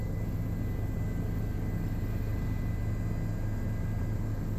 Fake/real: real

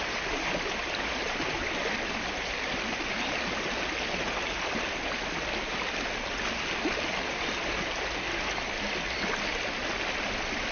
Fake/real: real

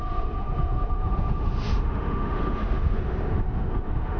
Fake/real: fake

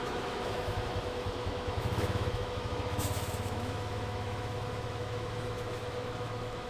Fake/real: fake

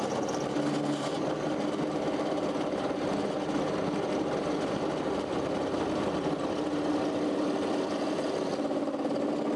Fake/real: real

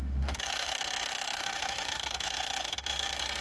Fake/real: fake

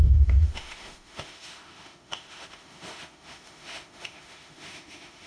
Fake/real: fake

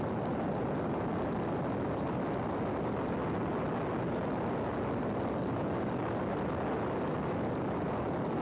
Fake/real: real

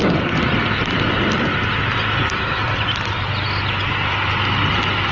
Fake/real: real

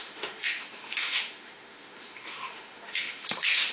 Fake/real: fake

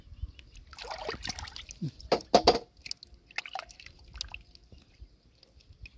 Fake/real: real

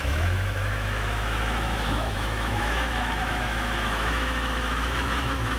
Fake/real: fake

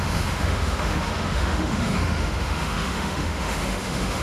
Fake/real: fake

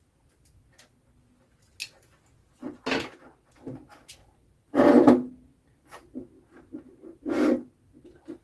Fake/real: real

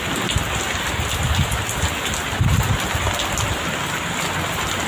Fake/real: real